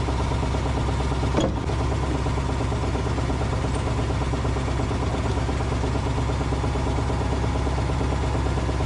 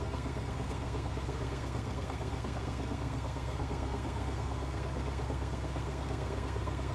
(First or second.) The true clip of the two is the first